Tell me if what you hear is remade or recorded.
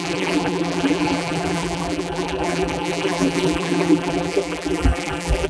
remade